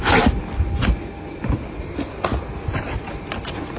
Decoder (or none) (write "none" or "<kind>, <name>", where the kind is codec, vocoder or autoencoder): none